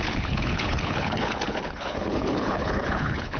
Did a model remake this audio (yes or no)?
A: yes